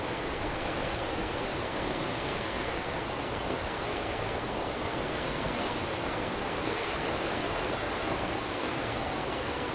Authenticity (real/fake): fake